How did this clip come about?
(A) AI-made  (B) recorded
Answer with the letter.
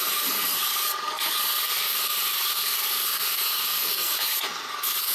A